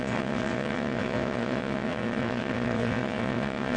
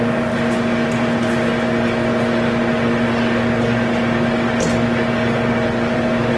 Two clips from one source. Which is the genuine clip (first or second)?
second